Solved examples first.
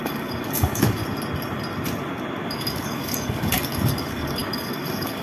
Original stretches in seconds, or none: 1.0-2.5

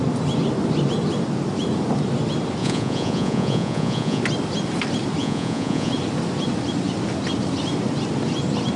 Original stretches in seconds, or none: 0.0-2.6; 4.2-5.2; 5.9-8.8

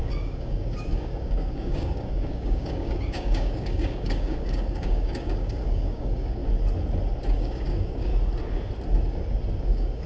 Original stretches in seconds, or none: 6.4-7.3; 8.1-9.6

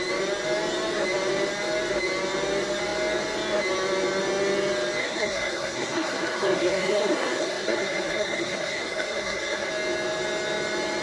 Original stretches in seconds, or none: 0.0-5.0; 9.7-11.0

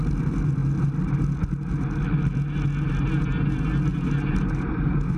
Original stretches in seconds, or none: 0.0-3.9; 4.7-5.2

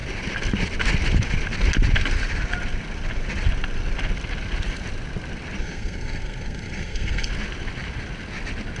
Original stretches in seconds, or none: 0.0-5.6; 7.3-8.8

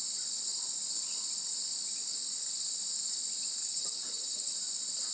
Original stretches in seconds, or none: 0.0-3.6; 4.5-5.1

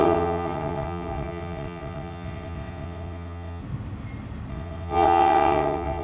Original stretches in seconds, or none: 3.6-4.5